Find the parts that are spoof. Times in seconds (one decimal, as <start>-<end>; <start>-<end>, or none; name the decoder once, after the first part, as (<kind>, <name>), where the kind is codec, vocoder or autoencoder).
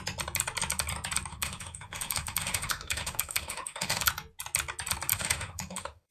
1.3-4.1 (autoencoder, DAC-VAE); 5.1-6.1